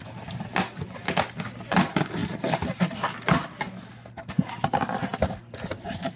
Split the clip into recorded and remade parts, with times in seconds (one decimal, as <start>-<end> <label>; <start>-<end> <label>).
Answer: 0.0-6.2 recorded